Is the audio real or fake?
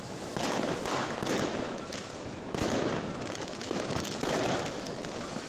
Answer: fake